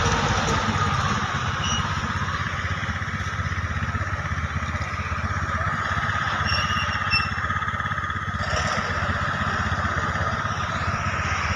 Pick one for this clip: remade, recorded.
recorded